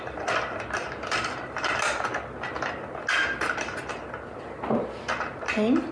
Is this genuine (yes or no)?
yes